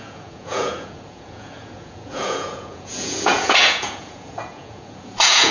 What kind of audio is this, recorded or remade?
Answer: remade